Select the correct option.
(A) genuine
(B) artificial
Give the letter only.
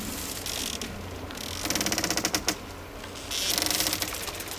A